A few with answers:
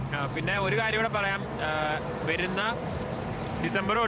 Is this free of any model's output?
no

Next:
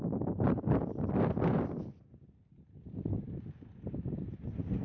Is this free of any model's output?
yes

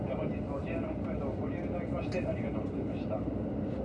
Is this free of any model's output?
yes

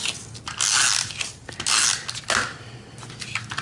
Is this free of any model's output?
yes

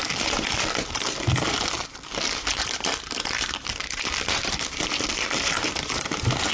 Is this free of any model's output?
no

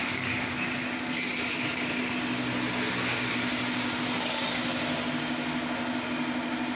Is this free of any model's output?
yes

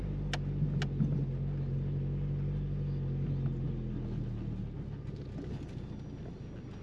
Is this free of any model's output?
yes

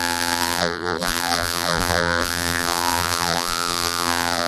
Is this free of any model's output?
no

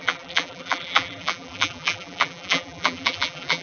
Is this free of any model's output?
no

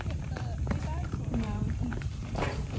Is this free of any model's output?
no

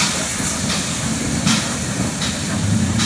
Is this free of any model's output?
no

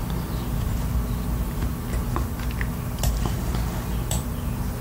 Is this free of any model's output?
no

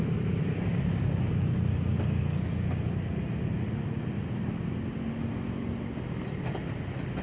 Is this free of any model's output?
yes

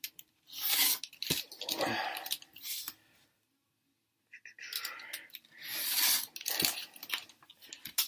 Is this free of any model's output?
yes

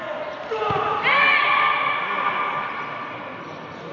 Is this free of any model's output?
no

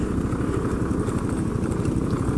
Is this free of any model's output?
no